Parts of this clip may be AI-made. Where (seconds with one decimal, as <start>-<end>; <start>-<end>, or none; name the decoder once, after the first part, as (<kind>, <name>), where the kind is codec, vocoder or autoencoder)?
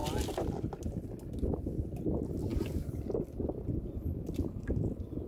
none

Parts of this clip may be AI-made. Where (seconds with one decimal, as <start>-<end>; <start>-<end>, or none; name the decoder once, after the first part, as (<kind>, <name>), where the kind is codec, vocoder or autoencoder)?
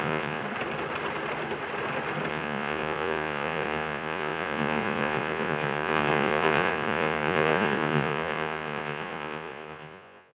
0.0-0.4 (vocoder, Vocos); 2.3-10.4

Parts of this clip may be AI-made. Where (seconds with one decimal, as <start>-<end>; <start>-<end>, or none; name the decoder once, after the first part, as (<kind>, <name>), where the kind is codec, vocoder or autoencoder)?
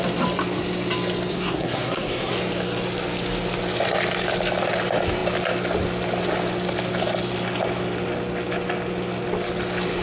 1.3-2.3 (codec, SNAC)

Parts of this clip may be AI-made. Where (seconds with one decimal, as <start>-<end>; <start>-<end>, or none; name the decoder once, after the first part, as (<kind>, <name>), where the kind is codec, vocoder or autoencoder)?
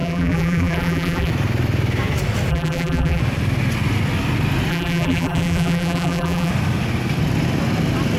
0.0-1.3 (vocoder, BigVGAN v2); 2.5-3.2; 4.7-6.5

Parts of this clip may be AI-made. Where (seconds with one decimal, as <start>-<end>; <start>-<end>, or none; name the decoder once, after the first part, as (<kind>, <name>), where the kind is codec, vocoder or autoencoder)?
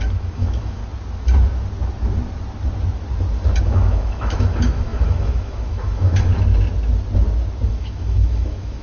0.0-0.8 (autoencoder, DAC-VAE); 3.6-6.3; 7.7-8.8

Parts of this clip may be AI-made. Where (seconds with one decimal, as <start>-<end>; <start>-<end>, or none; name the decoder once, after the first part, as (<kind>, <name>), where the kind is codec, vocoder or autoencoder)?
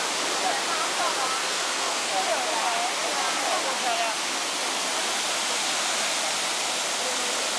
1.4-2.1 (codec, SNAC)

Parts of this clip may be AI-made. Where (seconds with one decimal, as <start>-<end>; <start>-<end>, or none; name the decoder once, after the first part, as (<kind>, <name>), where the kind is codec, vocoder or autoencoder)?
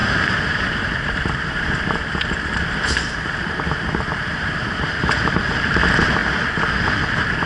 0.0-4.5 (vocoder, BigVGAN v2)